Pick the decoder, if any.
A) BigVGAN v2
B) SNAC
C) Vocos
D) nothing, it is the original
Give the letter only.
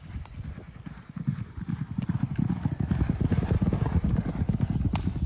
D